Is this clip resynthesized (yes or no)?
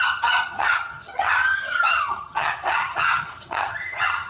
yes